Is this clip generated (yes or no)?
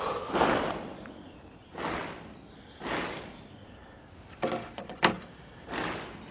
no